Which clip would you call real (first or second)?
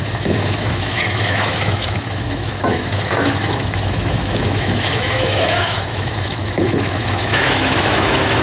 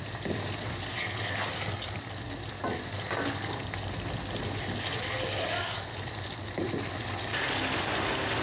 second